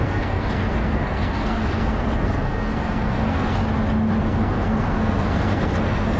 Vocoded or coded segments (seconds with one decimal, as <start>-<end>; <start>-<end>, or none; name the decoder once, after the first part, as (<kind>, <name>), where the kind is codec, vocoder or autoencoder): 0.0-3.6 (codec, SNAC); 4.2-6.2